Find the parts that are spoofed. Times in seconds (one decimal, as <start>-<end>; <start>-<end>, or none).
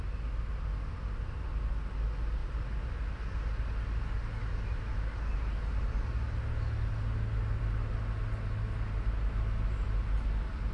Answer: none